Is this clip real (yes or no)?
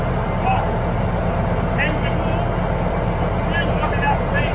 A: yes